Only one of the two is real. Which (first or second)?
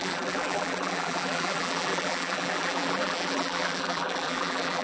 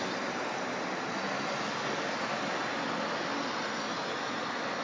second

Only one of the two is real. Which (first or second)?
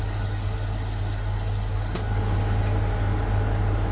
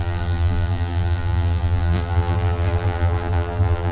first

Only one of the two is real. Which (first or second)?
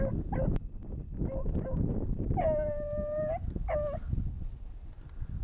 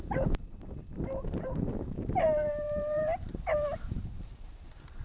first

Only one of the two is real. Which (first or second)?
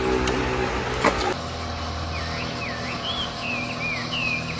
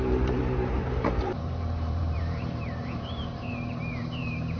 first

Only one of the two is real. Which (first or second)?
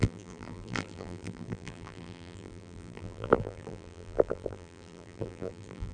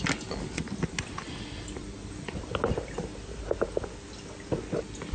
second